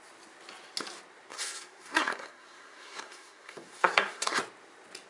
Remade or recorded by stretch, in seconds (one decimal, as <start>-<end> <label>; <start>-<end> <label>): 0.0-1.3 recorded; 1.3-4.4 remade; 4.4-5.1 recorded